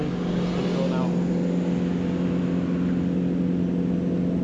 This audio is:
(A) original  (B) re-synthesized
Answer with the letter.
A